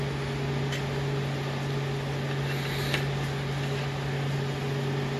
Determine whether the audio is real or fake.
real